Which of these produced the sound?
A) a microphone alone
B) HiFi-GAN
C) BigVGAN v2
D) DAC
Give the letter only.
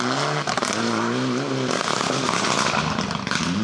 A